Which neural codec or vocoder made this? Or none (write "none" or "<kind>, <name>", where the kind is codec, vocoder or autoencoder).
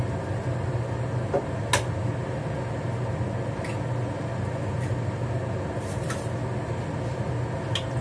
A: none